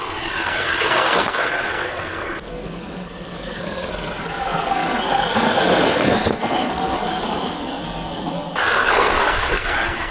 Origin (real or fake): fake